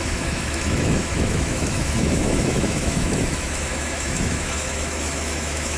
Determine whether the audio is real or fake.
fake